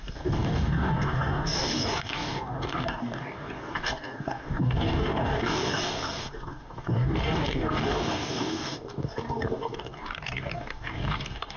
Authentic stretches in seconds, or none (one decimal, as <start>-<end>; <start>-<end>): none